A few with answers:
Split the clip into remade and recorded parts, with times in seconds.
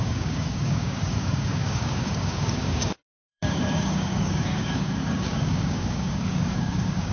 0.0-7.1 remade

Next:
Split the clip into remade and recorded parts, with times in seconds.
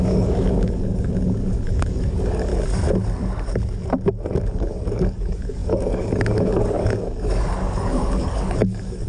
0.0-2.5 remade; 2.5-4.4 recorded; 4.4-9.1 remade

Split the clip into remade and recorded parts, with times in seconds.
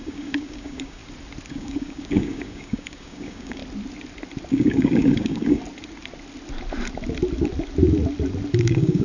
0.0-1.0 remade; 1.0-1.5 recorded; 1.5-3.6 remade; 3.6-4.5 recorded; 4.5-5.6 remade; 5.6-8.6 recorded; 8.6-9.0 remade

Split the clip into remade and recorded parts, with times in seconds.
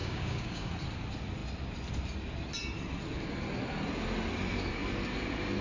0.0-0.7 remade; 0.7-5.6 recorded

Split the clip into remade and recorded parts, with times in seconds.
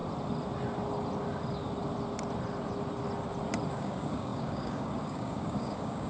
0.0-3.7 recorded; 3.7-6.1 remade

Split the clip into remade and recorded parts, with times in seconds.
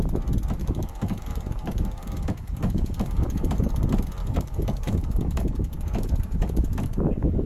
0.0-0.6 recorded; 0.6-3.7 remade; 3.7-4.2 recorded; 4.2-7.5 remade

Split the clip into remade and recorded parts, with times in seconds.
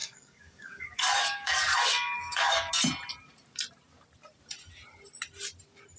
0.0-2.7 remade; 2.7-6.0 recorded